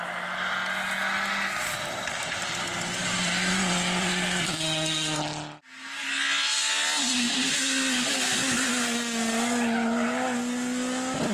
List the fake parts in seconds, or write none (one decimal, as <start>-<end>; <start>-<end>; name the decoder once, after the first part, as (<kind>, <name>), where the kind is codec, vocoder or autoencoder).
4.6-5.2 (autoencoder, DAC-VAE)

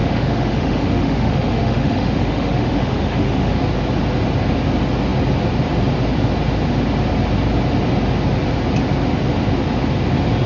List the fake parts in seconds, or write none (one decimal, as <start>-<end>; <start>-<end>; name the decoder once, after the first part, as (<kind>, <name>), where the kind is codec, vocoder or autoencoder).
0.0-3.5 (autoencoder, DAC-VAE)